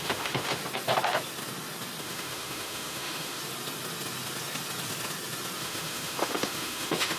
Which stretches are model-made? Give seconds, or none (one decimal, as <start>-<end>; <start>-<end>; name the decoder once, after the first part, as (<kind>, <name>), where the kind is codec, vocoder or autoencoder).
0.0-0.6 (autoencoder, DAC-VAE); 2.0-3.4; 5.6-7.2